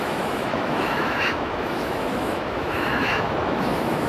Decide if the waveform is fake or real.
fake